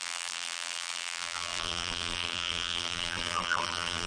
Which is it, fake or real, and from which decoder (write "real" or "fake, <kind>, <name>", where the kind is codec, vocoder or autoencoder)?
fake, vocoder, BigVGAN v2